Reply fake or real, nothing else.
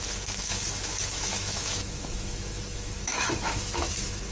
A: fake